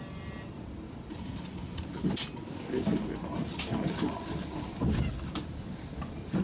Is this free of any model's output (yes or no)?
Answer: yes